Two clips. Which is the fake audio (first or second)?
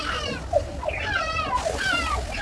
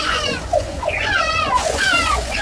second